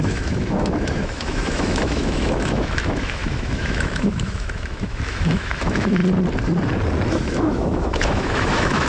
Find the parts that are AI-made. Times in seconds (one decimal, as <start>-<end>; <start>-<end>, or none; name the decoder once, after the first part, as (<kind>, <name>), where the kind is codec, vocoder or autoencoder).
0.0-6.0 (autoencoder, DAC-VAE); 7.1-8.9